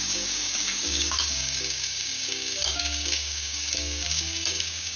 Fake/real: fake